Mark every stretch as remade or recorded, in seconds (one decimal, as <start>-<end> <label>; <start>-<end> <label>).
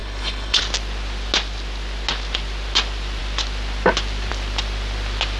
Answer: 0.0-0.6 remade; 0.6-5.4 recorded